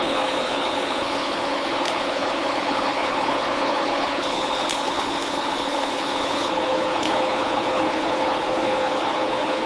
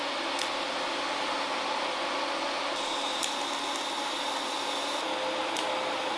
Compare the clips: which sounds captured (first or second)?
second